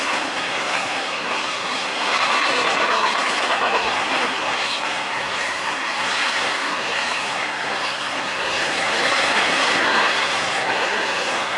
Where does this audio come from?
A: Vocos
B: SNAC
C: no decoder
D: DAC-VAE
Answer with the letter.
B